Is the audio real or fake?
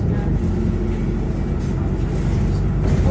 real